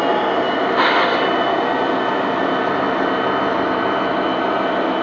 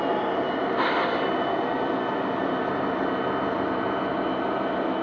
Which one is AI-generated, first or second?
second